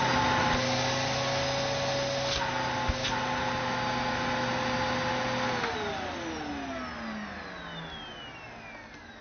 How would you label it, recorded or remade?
recorded